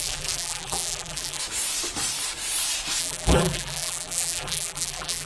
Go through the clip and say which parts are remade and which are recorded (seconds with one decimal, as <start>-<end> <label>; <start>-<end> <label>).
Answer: 0.0-1.4 remade; 1.4-3.0 recorded; 3.0-5.3 remade